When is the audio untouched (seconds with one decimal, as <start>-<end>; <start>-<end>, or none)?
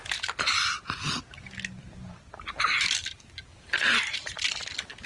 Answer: 0.0-1.8; 3.2-5.1